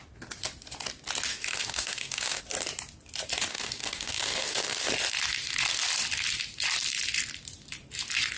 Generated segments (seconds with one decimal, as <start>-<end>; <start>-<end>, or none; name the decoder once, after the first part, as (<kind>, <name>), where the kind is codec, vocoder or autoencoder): 1.3-2.4 (codec, DAC); 3.5-4.9